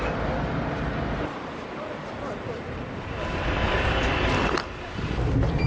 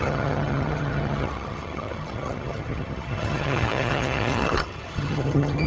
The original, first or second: first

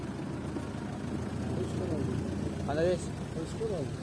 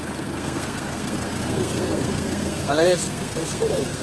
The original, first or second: first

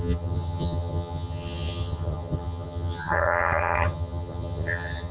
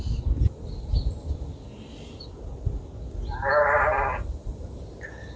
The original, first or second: second